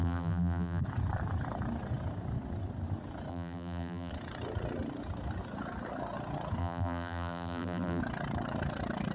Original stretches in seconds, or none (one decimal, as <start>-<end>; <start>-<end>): 0.8-3.3; 4.1-6.6; 8.0-9.1

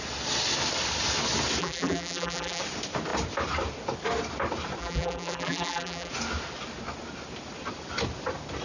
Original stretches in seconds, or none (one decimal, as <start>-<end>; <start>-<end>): 0.0-1.6; 2.6-4.8; 6.1-8.6

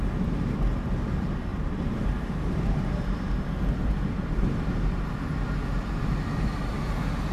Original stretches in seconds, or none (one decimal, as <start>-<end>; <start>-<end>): 0.0-1.5; 5.1-7.3